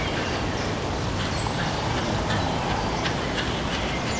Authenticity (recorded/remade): recorded